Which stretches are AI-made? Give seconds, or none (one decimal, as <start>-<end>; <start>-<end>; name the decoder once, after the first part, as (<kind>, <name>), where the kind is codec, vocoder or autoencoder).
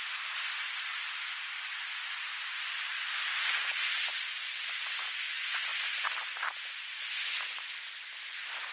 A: 0.9-2.3 (vocoder, BigVGAN v2); 3.7-4.2